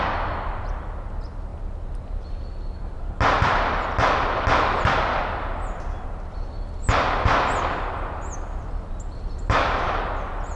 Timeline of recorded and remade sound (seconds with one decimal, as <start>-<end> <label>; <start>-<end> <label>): 0.0-10.6 recorded

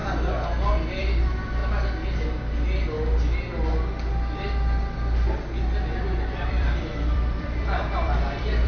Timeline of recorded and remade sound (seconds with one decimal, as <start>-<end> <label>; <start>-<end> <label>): 0.0-0.7 recorded; 0.7-1.6 remade; 1.6-6.5 recorded; 6.5-8.7 remade

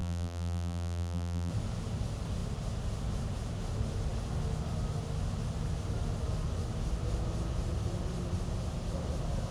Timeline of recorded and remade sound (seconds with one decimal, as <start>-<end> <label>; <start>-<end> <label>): 0.0-1.5 remade; 1.5-9.5 recorded

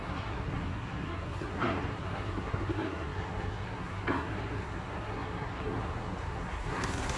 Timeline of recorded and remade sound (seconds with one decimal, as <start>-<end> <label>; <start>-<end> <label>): 0.0-7.2 remade

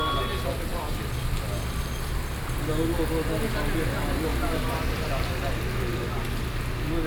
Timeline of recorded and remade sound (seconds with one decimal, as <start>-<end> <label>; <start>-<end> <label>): 0.0-0.7 recorded; 0.7-2.7 remade; 2.7-4.3 recorded; 4.3-5.5 remade; 5.5-7.1 recorded